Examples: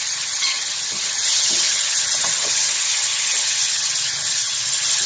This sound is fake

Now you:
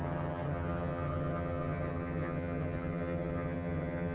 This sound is fake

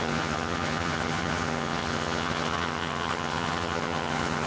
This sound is fake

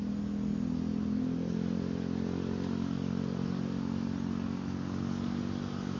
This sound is real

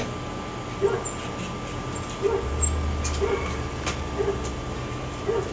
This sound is real